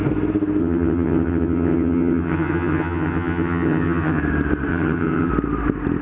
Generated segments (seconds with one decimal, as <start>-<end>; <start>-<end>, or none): 0.6-4.2; 4.7-5.3